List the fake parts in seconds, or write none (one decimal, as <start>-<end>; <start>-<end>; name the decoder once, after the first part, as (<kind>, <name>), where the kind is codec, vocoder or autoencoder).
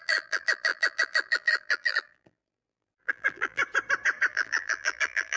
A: 0.0-3.6 (vocoder, BigVGAN v2); 4.3-5.4